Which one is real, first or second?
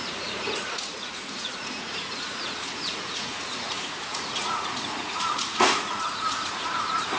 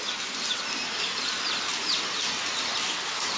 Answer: second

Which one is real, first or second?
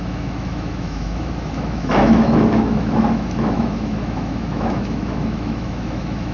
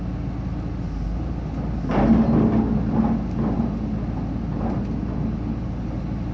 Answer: second